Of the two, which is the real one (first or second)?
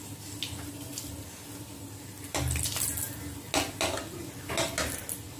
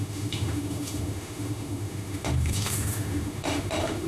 first